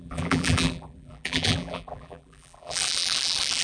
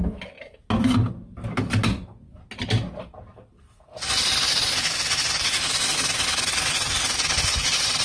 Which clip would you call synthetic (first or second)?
first